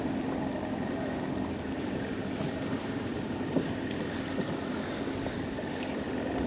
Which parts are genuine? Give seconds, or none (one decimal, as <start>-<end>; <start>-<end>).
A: 0.0-6.5